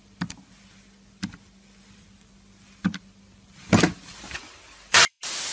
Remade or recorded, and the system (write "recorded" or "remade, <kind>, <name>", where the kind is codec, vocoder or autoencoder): remade, vocoder, BigVGAN v2